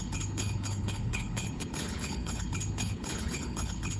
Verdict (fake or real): fake